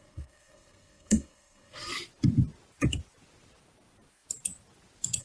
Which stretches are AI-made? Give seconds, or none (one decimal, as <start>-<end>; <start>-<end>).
0.0-1.9